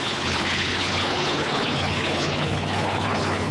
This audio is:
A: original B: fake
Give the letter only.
B